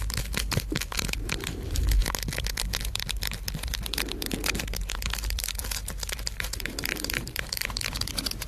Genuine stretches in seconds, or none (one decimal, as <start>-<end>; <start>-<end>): 2.0-2.8